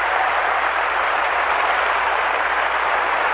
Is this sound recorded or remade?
remade